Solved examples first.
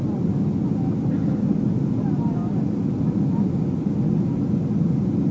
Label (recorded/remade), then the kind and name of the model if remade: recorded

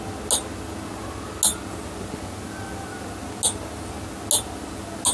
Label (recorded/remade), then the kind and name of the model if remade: recorded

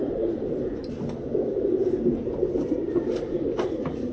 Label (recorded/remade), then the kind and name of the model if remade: remade, vocoder, BigVGAN v2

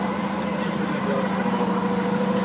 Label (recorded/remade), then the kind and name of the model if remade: recorded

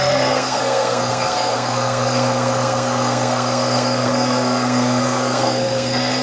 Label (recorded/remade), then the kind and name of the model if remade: remade, codec, SNAC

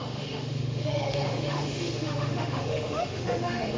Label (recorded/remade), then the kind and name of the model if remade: remade, autoencoder, DAC-VAE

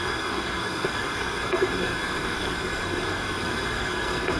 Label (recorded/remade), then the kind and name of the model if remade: remade, codec, SNAC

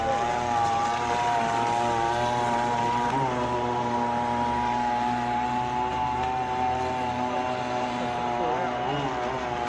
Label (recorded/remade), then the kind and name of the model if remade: recorded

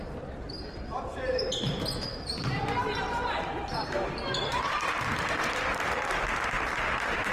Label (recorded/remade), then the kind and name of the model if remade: remade, vocoder, BigVGAN v2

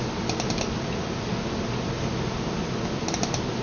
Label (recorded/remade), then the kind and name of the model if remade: recorded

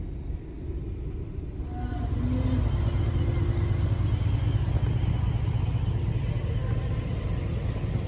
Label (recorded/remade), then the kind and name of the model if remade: recorded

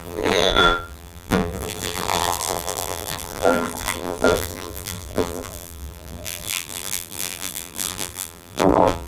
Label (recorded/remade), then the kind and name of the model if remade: remade, vocoder, BigVGAN v2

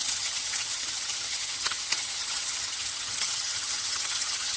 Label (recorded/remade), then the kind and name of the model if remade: remade, vocoder, HiFi-GAN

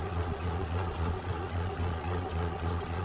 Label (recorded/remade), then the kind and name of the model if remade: remade, vocoder, Vocos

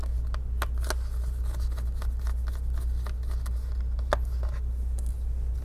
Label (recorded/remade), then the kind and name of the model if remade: recorded